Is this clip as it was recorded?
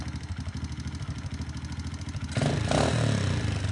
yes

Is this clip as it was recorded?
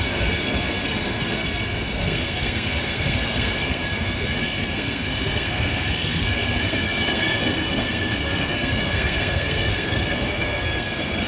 no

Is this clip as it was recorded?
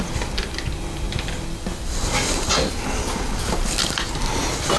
yes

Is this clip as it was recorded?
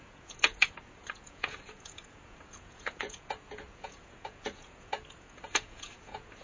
no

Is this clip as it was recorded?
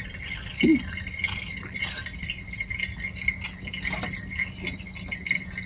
yes